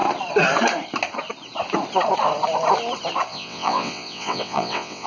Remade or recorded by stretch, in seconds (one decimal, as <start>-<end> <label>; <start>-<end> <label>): 0.0-3.3 recorded; 3.3-5.1 remade